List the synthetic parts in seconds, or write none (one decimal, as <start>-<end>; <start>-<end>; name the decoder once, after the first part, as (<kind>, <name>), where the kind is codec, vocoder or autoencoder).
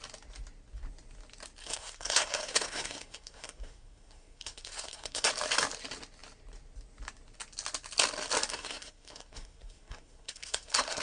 1.6-5.3 (codec, SNAC); 8.5-11.0